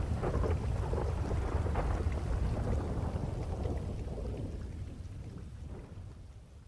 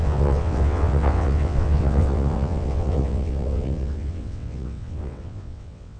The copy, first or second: second